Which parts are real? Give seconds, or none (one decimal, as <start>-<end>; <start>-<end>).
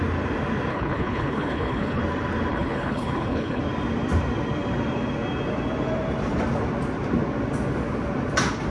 0.0-0.7; 2.0-2.5; 3.6-8.7